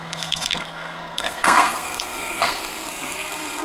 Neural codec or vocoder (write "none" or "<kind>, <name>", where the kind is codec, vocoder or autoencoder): codec, SNAC